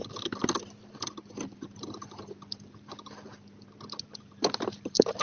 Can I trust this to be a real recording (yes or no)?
yes